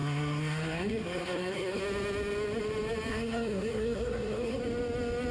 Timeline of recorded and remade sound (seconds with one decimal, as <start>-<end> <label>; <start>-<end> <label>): 0.0-1.8 remade; 1.8-3.1 recorded; 3.1-4.6 remade; 4.6-5.3 recorded